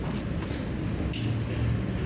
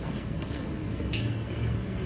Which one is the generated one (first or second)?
second